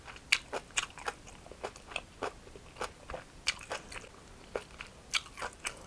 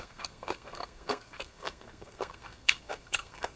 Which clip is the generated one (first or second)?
second